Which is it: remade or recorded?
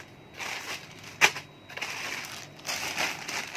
recorded